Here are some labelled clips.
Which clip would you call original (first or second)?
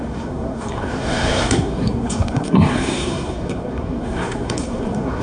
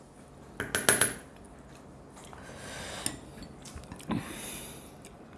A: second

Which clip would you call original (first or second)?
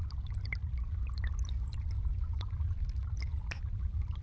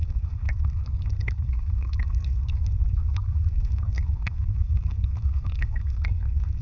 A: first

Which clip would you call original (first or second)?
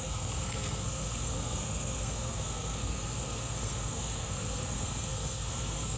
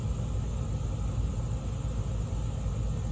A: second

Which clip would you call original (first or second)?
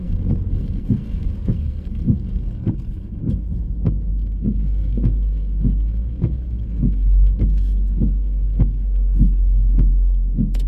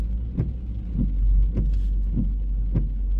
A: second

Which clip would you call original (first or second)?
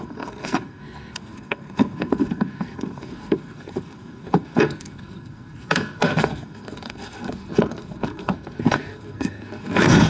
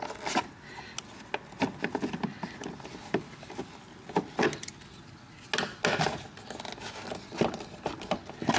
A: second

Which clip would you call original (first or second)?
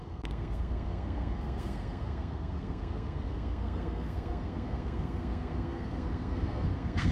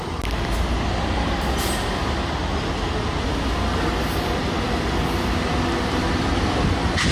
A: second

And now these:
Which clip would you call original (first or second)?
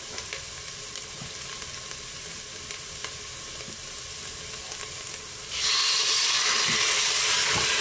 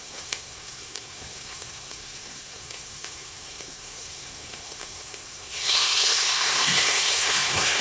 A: first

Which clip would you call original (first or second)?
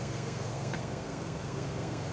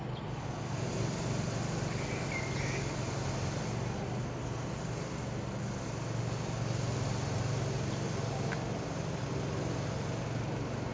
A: second